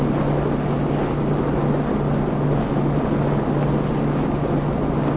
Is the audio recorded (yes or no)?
yes